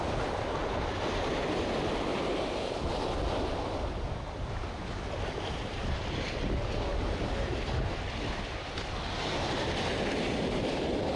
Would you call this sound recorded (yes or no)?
yes